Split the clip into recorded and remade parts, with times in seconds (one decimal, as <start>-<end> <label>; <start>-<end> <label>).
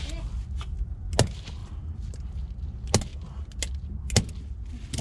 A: 0.0-1.6 recorded; 1.6-2.1 remade; 2.1-5.0 recorded